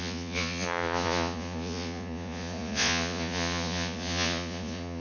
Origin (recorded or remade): remade